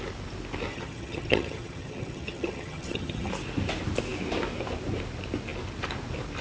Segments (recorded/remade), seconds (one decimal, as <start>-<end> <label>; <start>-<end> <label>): 0.0-0.7 recorded; 0.7-3.3 remade; 3.3-6.4 recorded